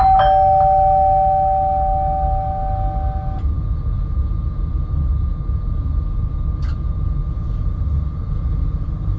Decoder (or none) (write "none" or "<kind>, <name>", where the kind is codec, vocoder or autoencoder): none